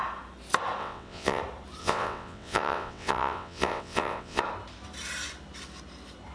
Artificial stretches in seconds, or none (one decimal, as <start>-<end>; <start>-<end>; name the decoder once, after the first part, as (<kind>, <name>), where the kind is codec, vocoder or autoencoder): 0.8-1.4 (vocoder, WaveNeXt); 1.8-4.4